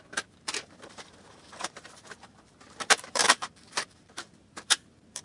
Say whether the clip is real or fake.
fake